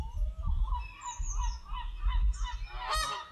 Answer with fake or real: real